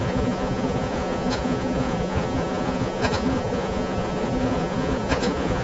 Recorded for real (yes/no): no